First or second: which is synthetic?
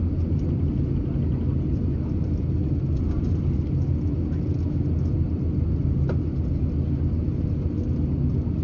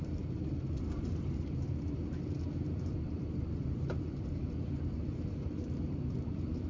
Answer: second